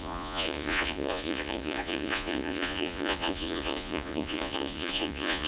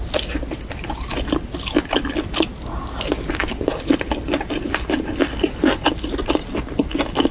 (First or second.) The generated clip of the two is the first